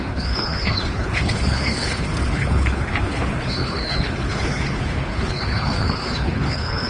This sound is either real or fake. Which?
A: fake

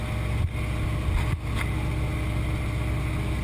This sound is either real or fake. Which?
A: real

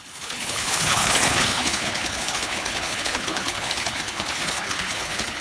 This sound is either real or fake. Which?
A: fake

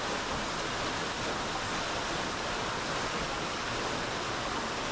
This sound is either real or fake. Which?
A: real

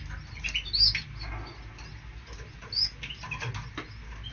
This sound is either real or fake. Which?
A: real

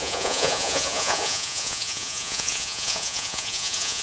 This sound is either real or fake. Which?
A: fake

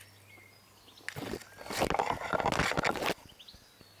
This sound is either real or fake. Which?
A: real